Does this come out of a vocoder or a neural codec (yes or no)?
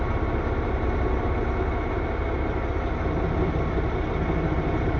no